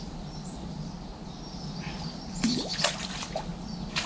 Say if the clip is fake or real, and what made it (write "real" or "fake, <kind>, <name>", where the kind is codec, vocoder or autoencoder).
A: real